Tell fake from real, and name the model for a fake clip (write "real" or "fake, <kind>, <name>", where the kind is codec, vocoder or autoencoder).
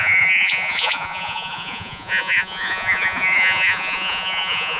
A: fake, vocoder, Vocos